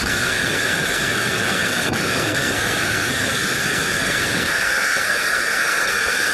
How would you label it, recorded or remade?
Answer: remade